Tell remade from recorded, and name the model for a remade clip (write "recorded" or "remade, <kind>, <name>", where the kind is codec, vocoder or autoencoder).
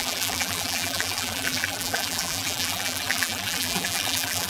remade, vocoder, BigVGAN v2